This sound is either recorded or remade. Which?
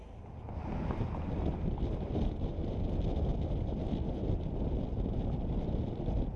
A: recorded